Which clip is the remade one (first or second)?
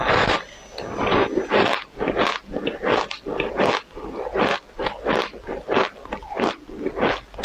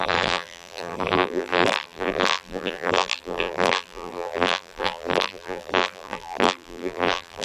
second